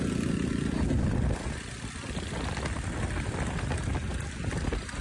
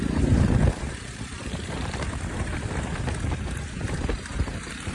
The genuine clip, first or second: first